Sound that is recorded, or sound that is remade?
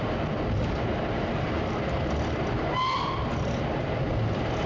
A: recorded